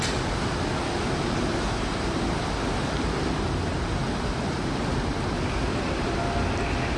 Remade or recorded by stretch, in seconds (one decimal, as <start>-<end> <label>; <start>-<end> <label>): 0.0-7.0 recorded